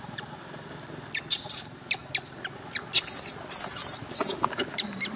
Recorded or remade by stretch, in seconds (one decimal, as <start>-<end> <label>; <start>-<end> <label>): 0.0-5.2 recorded